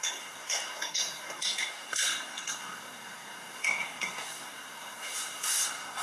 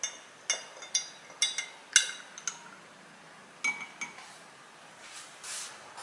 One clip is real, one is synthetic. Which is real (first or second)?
second